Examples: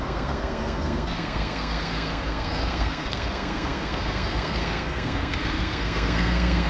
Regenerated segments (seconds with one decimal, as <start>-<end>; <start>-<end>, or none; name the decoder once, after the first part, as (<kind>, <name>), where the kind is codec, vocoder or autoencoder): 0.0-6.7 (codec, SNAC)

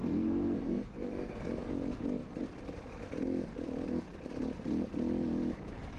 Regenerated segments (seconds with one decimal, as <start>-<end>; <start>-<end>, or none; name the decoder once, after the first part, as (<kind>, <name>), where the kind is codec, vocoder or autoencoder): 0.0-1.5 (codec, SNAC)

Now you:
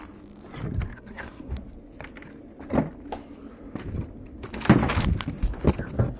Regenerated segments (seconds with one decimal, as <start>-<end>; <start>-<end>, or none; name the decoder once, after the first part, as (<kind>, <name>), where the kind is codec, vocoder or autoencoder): 0.9-1.5 (codec, SNAC)

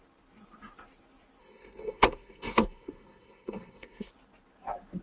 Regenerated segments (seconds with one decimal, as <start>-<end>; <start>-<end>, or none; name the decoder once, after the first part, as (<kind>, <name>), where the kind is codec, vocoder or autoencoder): 1.4-4.1 (codec, SNAC)